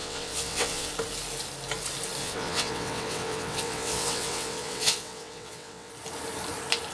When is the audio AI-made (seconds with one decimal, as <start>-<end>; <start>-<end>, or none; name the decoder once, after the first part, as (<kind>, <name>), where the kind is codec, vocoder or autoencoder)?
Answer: 0.0-0.9 (vocoder, WaveNeXt); 2.2-5.9